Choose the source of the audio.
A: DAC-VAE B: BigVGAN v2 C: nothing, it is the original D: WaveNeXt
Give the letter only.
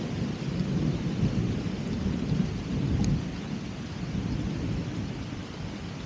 C